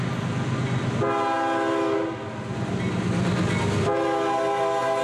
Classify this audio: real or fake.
real